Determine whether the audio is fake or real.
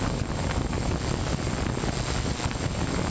real